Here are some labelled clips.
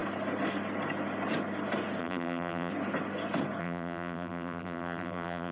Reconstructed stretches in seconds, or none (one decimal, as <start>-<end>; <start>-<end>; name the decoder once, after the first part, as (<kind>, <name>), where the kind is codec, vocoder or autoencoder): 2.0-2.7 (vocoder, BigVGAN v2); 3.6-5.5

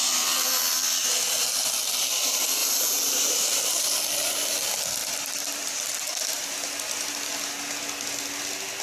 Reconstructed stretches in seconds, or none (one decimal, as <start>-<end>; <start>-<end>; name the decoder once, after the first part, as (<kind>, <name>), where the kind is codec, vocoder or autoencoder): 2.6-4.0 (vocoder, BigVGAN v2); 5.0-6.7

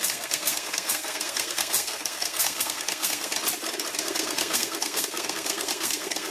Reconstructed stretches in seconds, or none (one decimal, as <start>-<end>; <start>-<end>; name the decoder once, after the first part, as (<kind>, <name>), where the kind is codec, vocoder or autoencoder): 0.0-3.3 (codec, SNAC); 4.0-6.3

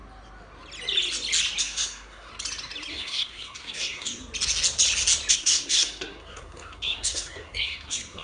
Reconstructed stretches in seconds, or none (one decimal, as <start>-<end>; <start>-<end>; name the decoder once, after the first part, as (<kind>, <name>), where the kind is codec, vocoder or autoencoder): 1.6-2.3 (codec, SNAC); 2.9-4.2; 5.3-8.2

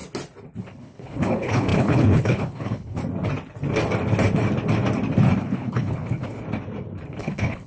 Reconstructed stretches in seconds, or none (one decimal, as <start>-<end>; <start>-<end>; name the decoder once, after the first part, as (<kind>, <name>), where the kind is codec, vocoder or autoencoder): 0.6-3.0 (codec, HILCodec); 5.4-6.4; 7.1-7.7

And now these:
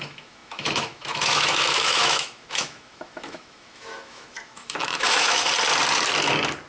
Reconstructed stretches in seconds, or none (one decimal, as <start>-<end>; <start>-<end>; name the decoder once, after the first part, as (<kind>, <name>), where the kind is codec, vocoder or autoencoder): 0.0-5.5 (autoencoder, DAC-VAE)